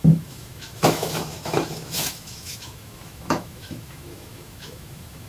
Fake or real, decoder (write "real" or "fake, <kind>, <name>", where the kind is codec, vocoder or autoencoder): fake, autoencoder, DAC-VAE